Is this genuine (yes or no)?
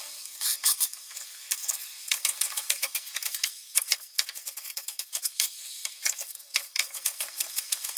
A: no